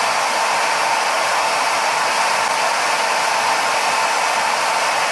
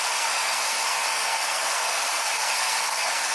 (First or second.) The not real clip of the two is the second